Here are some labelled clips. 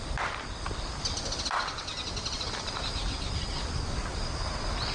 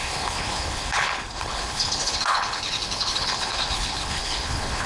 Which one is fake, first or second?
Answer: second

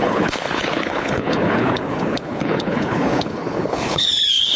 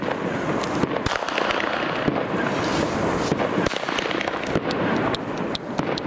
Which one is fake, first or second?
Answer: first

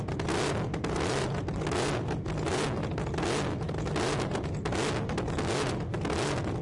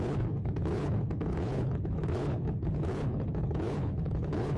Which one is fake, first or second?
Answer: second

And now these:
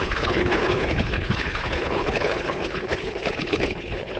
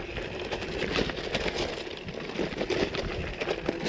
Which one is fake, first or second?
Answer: first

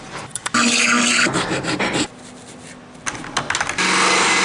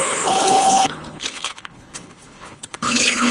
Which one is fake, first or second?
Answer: second